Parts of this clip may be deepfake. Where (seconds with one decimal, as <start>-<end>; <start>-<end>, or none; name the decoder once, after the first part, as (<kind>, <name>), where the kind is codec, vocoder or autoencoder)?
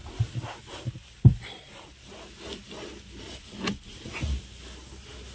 none